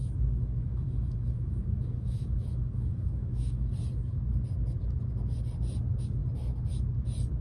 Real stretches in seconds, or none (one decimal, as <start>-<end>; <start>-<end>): 3.7-7.4